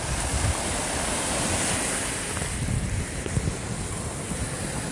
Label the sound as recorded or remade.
recorded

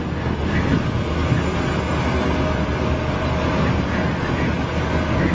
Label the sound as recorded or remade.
recorded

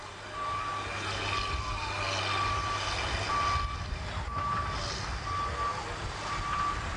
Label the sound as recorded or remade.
recorded